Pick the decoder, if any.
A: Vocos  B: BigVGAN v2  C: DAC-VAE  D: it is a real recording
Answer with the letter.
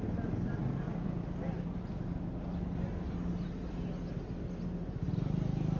D